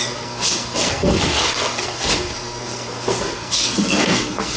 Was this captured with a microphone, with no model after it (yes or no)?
no